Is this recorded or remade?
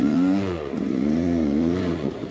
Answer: remade